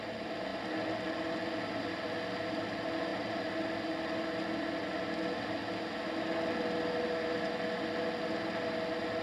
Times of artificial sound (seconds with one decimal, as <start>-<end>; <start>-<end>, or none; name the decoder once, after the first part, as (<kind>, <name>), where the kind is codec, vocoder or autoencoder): none